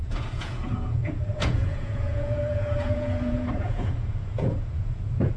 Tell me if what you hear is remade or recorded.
remade